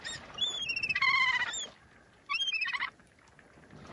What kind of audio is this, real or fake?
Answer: real